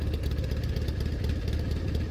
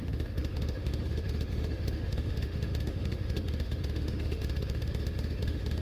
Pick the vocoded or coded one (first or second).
second